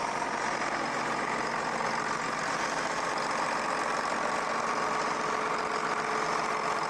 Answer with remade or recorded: recorded